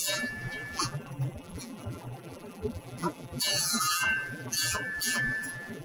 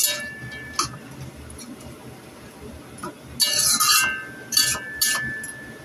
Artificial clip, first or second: first